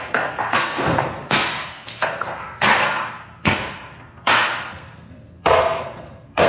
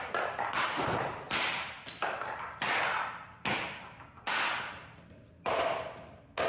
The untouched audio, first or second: second